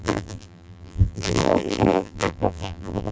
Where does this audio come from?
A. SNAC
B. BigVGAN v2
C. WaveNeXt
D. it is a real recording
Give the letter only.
B